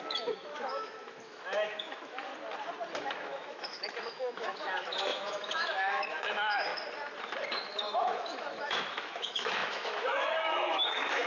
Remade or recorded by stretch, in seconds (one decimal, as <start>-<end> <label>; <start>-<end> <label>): 0.0-2.3 remade; 2.3-3.0 recorded; 3.0-6.7 remade; 6.7-7.7 recorded; 7.7-11.3 remade